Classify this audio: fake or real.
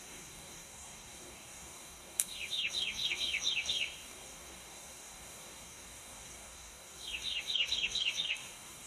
fake